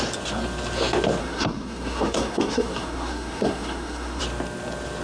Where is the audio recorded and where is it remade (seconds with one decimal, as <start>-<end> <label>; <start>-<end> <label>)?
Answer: 0.0-1.2 recorded; 1.2-4.2 remade; 4.2-5.0 recorded